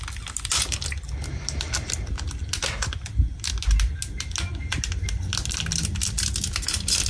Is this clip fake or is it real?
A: real